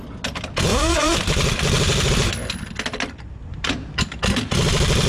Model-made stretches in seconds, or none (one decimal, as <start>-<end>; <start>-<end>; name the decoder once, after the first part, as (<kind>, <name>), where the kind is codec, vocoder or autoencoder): 0.7-2.1 (vocoder, BigVGAN v2); 3.5-4.0